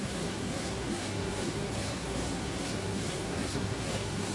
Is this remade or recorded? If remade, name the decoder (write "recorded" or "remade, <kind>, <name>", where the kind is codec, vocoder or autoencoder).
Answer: remade, codec, SNAC